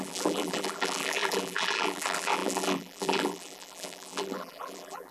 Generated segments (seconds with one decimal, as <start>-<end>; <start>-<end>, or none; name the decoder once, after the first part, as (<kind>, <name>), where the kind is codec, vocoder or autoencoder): 0.0-5.1 (vocoder, BigVGAN v2)

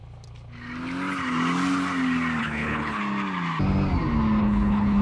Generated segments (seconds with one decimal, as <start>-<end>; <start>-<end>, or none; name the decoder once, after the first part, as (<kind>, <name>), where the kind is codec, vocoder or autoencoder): 2.4-3.0 (codec, HILCodec); 4.4-5.0

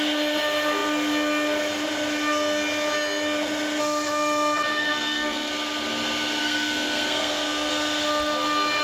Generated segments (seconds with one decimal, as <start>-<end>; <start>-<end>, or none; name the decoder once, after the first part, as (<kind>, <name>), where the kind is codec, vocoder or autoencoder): 4.7-5.5 (codec, SNAC); 6.4-7.7